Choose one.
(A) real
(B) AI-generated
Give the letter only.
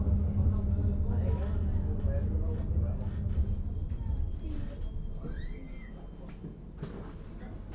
A